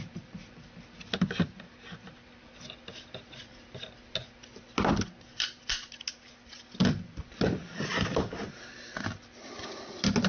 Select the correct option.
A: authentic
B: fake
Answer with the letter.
A